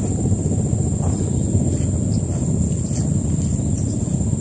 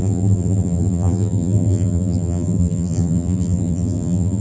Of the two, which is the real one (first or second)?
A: first